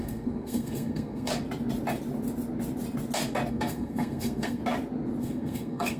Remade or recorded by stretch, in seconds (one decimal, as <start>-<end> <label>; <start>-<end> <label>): 0.0-1.3 remade; 1.3-3.5 recorded; 3.5-4.6 remade; 4.6-5.2 recorded; 5.2-6.0 remade